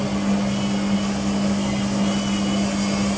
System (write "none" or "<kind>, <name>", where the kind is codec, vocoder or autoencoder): none